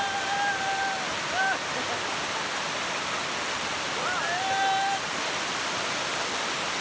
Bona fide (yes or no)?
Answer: yes